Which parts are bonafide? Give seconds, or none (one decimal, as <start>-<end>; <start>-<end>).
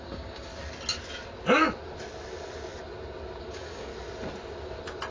0.5-3.4; 3.9-5.1